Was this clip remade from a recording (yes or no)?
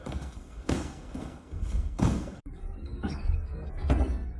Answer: yes